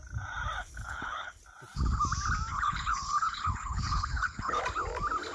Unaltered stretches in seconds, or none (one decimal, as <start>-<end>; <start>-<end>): 0.0-0.6; 1.4-2.5; 4.6-5.3